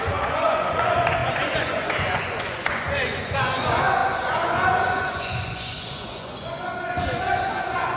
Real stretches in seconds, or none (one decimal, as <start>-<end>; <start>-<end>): none